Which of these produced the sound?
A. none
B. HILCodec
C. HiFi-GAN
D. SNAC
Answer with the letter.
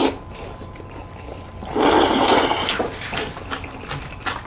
A